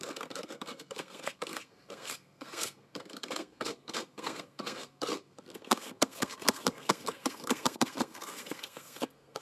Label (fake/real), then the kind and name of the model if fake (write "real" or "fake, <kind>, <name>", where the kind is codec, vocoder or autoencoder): fake, codec, SNAC